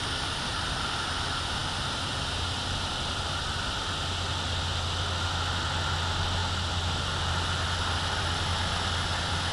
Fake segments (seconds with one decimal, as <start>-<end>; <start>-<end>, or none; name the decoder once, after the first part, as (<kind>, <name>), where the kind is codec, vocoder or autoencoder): none